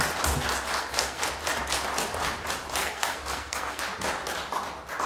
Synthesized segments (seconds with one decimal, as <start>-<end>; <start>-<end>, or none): 0.8-1.3; 2.8-3.8